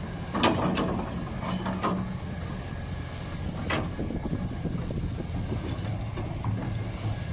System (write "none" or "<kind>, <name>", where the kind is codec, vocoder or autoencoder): none